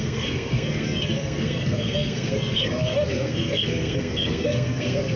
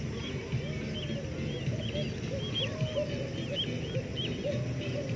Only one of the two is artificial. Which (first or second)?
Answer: first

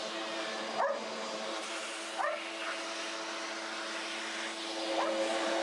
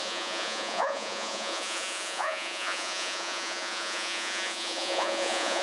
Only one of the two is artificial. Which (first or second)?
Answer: second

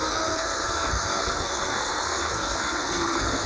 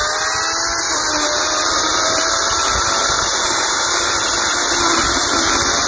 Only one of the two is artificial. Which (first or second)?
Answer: first